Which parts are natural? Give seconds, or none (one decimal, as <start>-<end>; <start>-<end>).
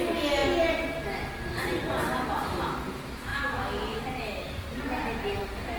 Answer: 0.0-3.3; 4.0-5.8